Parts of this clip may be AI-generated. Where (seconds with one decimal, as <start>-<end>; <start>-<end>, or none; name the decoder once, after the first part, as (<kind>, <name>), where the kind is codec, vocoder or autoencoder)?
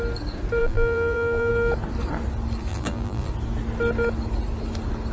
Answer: 0.6-1.5 (vocoder, BigVGAN v2); 2.7-3.3